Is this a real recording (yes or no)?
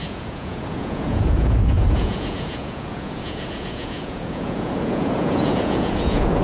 no